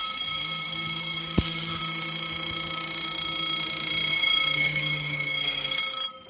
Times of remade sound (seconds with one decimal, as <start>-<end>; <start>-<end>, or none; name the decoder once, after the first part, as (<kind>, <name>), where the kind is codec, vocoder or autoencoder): 0.0-1.8 (codec, DAC); 4.1-5.8